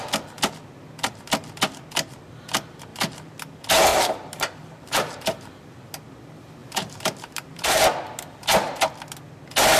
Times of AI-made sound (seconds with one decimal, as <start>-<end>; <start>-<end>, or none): 2.9-3.4; 3.9-5.9; 6.6-7.8